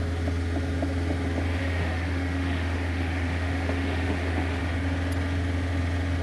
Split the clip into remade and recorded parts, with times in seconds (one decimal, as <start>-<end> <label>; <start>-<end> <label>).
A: 0.0-1.6 recorded; 1.6-4.6 remade; 4.6-6.2 recorded